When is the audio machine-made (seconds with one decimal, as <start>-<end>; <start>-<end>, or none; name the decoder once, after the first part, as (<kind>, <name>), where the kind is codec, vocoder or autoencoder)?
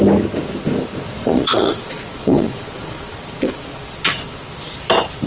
1.2-4.4 (vocoder, Vocos)